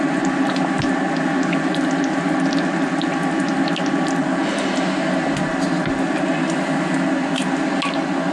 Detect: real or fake real